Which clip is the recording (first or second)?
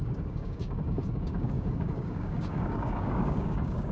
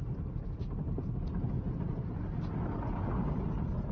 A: second